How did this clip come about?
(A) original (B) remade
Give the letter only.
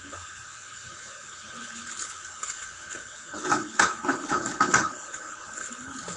B